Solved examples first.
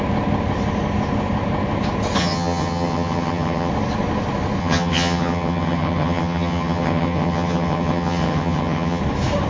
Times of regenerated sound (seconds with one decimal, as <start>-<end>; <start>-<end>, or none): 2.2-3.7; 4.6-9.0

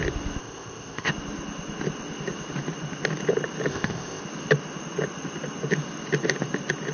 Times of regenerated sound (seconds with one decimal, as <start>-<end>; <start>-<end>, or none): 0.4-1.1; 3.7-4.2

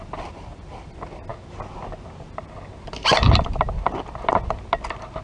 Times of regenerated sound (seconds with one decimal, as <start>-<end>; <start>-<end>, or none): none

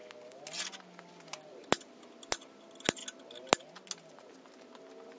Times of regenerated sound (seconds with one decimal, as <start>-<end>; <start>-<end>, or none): none